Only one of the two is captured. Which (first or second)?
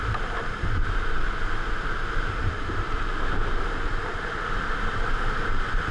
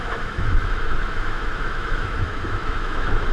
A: first